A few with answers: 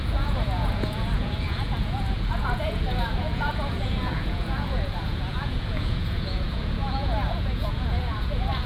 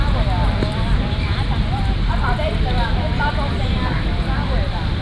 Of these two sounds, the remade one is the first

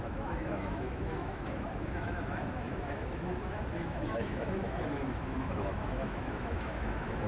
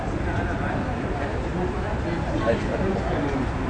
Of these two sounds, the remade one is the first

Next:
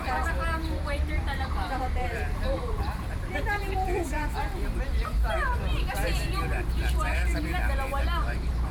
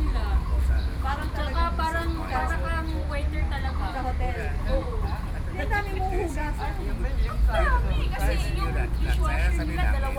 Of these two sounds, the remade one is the first